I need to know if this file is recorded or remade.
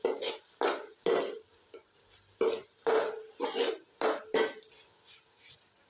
recorded